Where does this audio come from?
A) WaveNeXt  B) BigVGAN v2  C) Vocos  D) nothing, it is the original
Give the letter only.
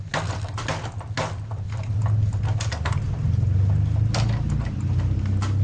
D